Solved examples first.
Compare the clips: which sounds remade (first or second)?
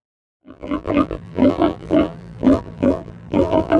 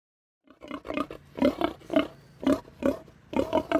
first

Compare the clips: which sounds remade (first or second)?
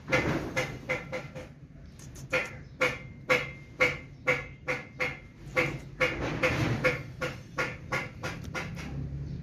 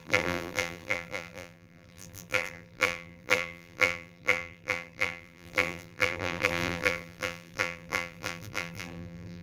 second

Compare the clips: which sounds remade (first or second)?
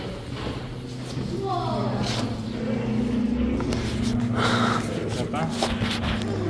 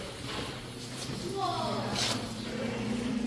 second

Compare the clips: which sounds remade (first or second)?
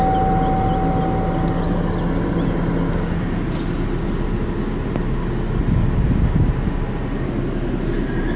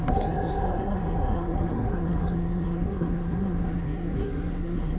second